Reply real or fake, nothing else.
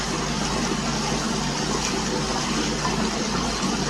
real